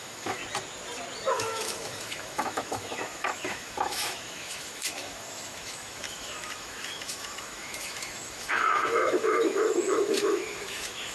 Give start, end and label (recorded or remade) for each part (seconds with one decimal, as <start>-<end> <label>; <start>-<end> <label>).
0.0-0.4 remade; 0.4-1.3 recorded; 1.3-11.1 remade